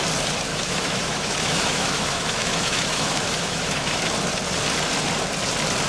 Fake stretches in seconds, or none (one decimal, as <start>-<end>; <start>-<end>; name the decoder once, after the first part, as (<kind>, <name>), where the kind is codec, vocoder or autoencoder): 0.5-4.0 (autoencoder, DAC-VAE)